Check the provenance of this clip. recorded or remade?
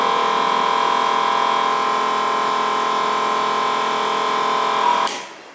recorded